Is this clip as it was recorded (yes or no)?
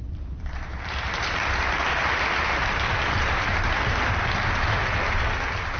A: yes